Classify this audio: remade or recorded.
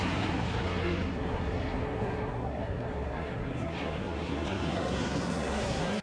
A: remade